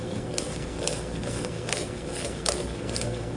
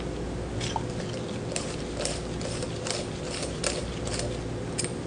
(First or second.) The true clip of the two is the second